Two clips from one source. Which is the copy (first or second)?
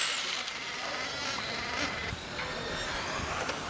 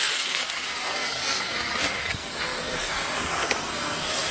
second